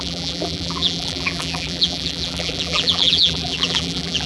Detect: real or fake fake